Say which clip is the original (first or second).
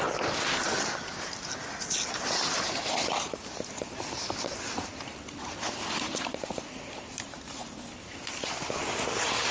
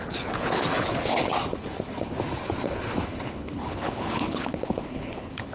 first